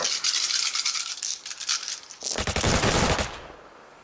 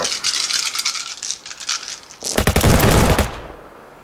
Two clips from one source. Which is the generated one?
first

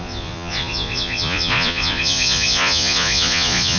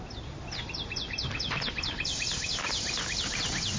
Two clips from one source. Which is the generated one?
first